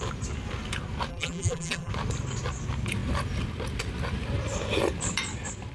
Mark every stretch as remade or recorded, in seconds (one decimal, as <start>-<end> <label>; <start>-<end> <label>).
0.0-1.1 recorded; 1.1-1.9 remade; 1.9-5.7 recorded